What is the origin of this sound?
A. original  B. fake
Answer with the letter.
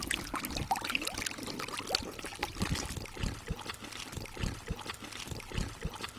A